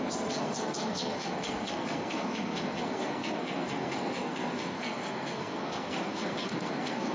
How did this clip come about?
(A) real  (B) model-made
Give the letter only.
B